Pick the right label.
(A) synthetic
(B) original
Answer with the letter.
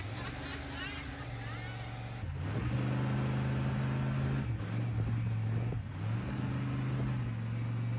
B